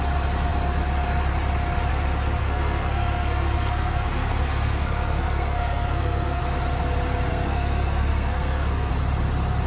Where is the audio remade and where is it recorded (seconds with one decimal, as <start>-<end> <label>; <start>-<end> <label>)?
0.0-2.4 recorded; 2.4-6.4 remade; 6.4-7.3 recorded; 7.3-8.9 remade; 8.9-9.7 recorded